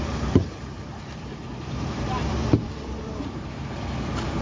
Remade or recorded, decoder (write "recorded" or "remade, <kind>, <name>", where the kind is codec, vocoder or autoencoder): remade, vocoder, BigVGAN v2